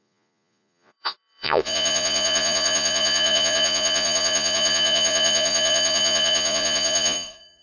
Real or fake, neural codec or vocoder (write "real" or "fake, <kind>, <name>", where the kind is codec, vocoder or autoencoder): fake, vocoder, Vocos